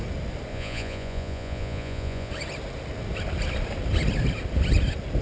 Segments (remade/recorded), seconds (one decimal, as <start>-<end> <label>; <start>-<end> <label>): 0.0-0.5 recorded; 0.5-2.3 remade; 2.3-5.2 recorded